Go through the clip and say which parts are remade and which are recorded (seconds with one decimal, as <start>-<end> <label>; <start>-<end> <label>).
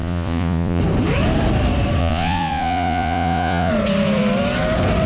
0.0-0.8 remade; 0.8-2.0 recorded; 2.0-3.7 remade; 3.7-5.1 recorded